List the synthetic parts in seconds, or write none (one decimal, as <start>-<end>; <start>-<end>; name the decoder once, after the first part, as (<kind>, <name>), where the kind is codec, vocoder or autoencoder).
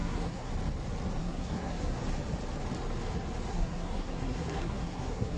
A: 0.0-0.5 (codec, SNAC); 1.2-2.0; 3.5-5.4